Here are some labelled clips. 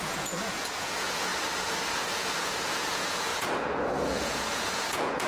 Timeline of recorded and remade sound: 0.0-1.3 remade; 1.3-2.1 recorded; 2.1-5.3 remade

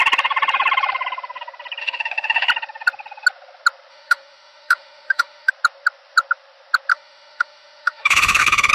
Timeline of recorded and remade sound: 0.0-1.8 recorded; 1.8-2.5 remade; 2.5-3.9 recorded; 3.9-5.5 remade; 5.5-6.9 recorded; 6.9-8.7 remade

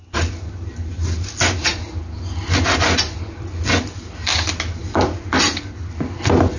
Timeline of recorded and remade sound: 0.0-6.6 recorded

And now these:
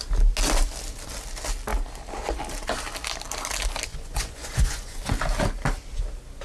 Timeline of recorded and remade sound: 0.0-3.9 recorded; 3.9-5.1 remade; 5.1-6.4 recorded

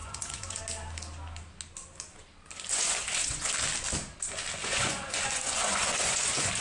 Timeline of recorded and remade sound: 0.0-0.6 remade; 0.6-2.7 recorded; 2.7-3.5 remade; 3.5-4.6 recorded; 4.6-6.6 remade

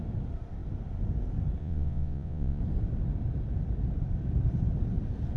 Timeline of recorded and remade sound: 0.0-1.6 recorded; 1.6-2.6 remade; 2.6-5.4 recorded

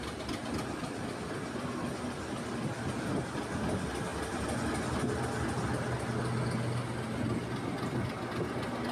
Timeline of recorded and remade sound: 0.0-8.9 recorded

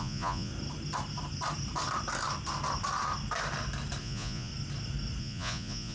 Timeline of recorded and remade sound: 0.0-0.5 remade; 0.5-4.0 recorded; 4.0-4.5 remade; 4.5-5.2 recorded; 5.2-5.9 remade